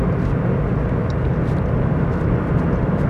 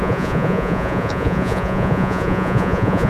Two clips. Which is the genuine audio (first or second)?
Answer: first